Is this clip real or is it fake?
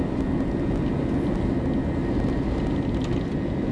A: real